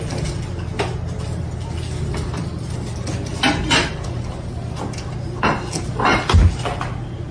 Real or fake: real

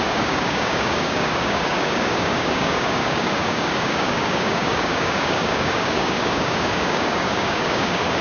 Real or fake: fake